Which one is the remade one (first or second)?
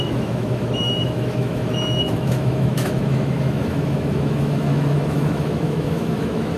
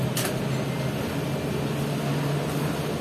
first